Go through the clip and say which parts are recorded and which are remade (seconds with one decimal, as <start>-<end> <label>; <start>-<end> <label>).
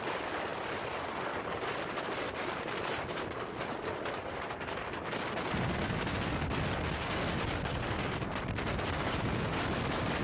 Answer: 0.0-10.2 recorded